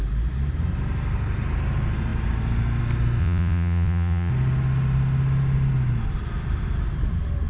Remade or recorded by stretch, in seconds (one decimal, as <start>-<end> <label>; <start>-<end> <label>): 0.0-3.2 recorded; 3.2-4.3 remade; 4.3-7.5 recorded